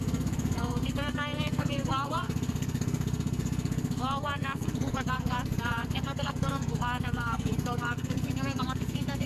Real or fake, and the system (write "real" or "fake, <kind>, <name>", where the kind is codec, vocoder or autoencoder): fake, codec, SNAC